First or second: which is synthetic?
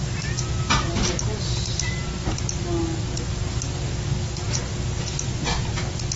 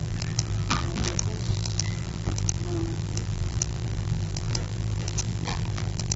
second